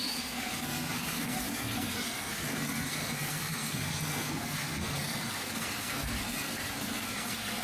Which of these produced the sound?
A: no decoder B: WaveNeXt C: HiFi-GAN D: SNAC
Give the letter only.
D